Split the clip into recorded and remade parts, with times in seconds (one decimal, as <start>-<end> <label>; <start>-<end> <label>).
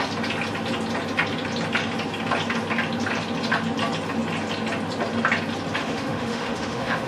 0.0-5.8 recorded; 5.8-7.1 remade